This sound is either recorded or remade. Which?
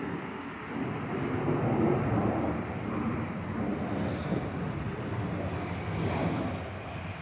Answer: recorded